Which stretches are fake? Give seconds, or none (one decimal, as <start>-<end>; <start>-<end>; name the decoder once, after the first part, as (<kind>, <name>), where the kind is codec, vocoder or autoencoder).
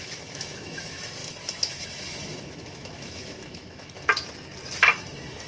0.0-4.1 (autoencoder, DAC-VAE); 4.9-5.5